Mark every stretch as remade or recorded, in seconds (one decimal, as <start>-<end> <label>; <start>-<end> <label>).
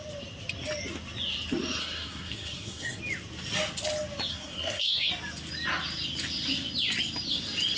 0.0-1.8 recorded; 1.8-3.0 remade; 3.0-4.3 recorded; 4.3-5.1 remade; 5.1-7.8 recorded